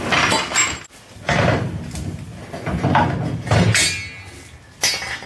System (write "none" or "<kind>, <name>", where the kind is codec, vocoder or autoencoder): none